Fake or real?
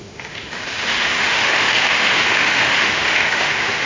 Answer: fake